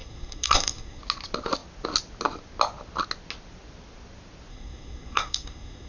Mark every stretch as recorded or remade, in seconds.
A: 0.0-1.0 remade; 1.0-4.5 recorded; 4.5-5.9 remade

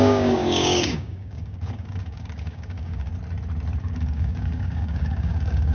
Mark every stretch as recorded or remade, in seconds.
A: 0.0-3.1 remade; 3.1-3.8 recorded; 3.8-5.7 remade